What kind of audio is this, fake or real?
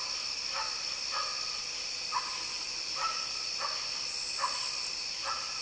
real